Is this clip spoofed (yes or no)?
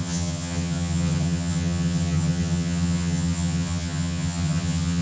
yes